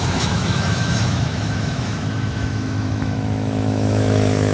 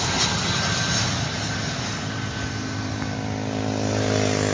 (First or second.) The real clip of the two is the second